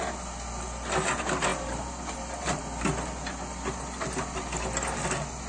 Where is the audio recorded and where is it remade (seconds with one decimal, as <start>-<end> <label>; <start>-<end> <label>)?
0.0-5.5 recorded